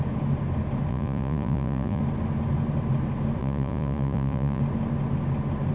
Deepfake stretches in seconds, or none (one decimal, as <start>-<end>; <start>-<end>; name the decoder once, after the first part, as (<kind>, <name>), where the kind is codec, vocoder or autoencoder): 0.9-2.0 (vocoder, Vocos); 3.4-4.6